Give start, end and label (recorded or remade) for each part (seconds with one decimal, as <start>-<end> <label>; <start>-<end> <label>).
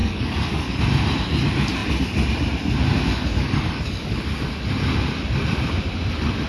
0.0-0.8 remade; 0.8-3.1 recorded; 3.1-4.4 remade; 4.4-6.5 recorded